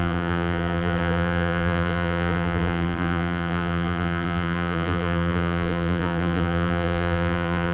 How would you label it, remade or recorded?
remade